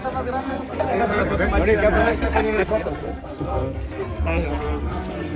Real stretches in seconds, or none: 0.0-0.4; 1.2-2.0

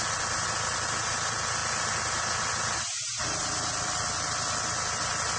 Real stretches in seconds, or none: 0.0-5.4

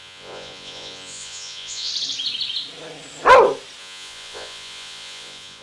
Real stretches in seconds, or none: 1.9-3.8

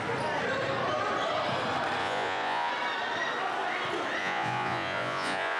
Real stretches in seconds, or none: 0.0-2.0; 2.7-4.2